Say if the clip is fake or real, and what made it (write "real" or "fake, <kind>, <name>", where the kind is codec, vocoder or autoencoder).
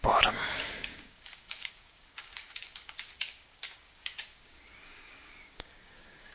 fake, codec, DAC